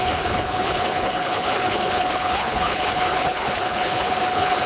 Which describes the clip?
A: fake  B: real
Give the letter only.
A